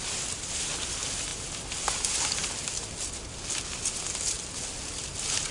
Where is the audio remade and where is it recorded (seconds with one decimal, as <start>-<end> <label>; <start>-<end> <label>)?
0.0-5.5 recorded